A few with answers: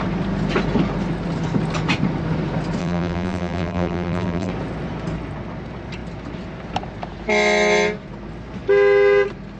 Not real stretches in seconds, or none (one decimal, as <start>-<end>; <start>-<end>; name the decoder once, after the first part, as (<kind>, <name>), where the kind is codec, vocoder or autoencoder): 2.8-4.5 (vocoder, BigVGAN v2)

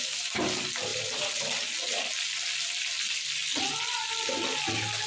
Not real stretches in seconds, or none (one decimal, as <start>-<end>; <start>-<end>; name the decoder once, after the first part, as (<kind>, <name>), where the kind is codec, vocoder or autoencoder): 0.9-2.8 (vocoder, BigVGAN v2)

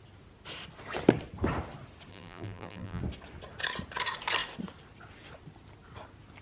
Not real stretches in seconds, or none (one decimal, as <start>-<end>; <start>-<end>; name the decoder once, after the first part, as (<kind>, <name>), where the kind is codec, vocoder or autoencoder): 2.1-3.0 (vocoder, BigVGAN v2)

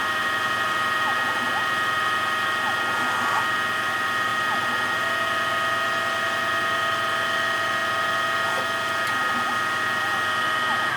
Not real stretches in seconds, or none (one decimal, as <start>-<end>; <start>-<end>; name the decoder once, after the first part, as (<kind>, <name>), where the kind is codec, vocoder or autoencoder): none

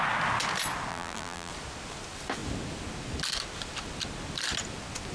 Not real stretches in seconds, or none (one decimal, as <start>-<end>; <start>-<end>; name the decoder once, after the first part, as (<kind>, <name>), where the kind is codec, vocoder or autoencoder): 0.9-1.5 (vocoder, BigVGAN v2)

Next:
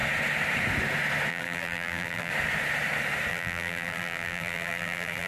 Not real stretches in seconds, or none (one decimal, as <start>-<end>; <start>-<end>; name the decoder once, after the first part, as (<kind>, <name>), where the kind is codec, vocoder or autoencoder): 1.3-2.3 (vocoder, BigVGAN v2); 3.3-5.3